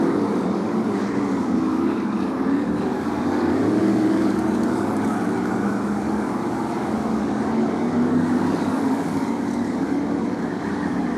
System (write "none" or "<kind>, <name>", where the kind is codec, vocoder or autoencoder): codec, DAC